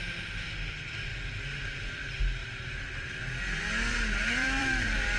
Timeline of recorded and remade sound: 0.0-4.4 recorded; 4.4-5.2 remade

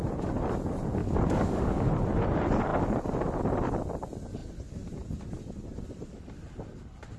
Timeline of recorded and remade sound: 0.0-1.0 recorded; 1.0-1.9 remade; 1.9-7.2 recorded

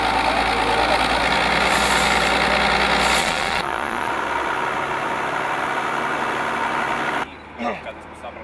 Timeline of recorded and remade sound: 0.0-3.2 recorded; 3.2-4.1 remade; 4.1-8.4 recorded

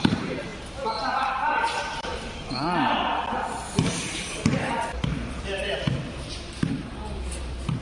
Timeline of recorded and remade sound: 0.0-0.5 remade; 0.5-1.3 recorded; 1.3-2.1 remade; 2.1-4.1 recorded; 4.1-7.8 remade

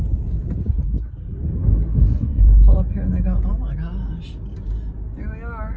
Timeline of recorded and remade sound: 0.0-1.9 recorded; 1.9-2.6 remade; 2.6-5.8 recorded

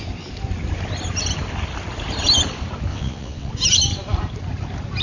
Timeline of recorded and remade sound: 0.0-2.9 recorded; 2.9-3.5 remade; 3.5-5.0 recorded

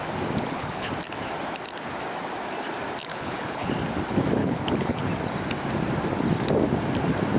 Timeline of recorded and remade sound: 0.0-0.4 recorded; 0.4-0.9 remade; 0.9-3.1 recorded; 3.1-3.7 remade; 3.7-4.4 recorded; 4.4-5.1 remade; 5.1-7.4 recorded